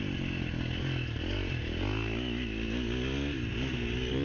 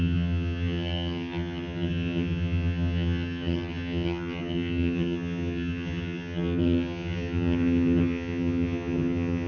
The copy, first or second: second